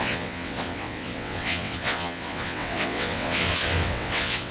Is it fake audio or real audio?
fake